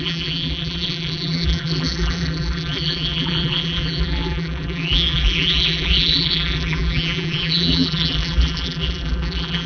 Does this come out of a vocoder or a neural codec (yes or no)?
yes